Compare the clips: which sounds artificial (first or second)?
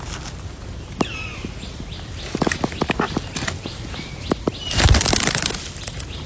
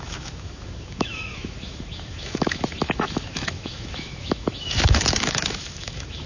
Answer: second